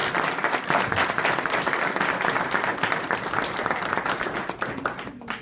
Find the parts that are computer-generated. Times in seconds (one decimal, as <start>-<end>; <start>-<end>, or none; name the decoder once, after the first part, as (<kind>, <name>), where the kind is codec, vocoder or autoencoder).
none